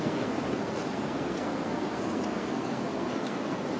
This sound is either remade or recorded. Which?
remade